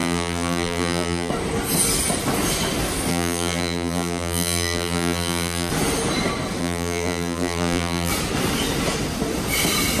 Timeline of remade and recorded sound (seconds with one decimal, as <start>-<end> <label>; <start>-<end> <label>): 0.0-1.3 remade; 1.3-3.1 recorded; 3.1-5.7 remade; 5.7-6.6 recorded; 6.6-8.1 remade; 8.1-10.0 recorded